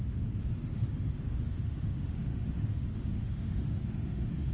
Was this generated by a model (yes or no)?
yes